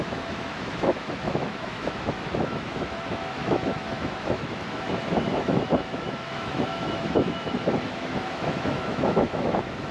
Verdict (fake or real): fake